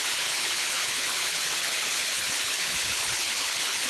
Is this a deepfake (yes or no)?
yes